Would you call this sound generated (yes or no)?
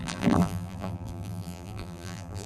yes